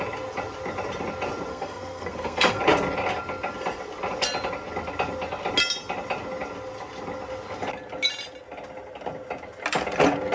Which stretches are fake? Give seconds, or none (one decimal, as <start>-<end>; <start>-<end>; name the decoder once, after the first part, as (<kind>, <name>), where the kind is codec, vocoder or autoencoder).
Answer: 1.5-2.6 (codec, SNAC)